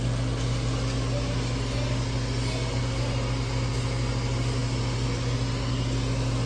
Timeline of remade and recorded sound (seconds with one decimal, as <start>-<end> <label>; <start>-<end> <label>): 0.0-6.5 recorded